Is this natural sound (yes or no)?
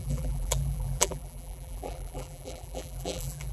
no